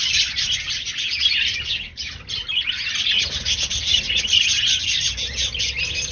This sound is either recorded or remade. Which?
recorded